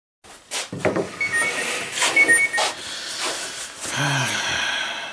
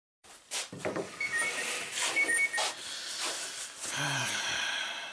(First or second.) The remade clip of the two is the second